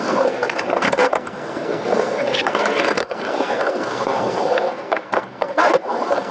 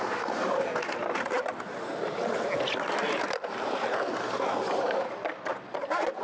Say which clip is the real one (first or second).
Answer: second